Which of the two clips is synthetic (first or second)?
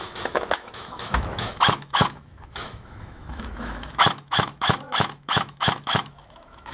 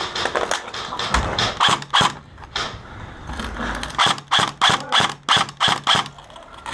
first